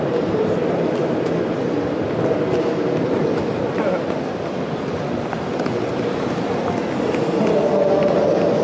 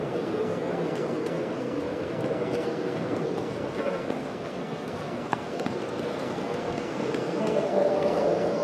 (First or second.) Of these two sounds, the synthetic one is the second